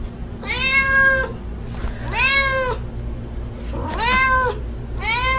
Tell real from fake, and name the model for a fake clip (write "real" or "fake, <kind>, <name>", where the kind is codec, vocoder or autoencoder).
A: real